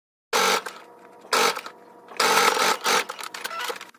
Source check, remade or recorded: recorded